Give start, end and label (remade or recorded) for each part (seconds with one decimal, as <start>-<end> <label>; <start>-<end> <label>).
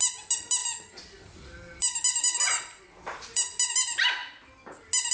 0.0-5.1 recorded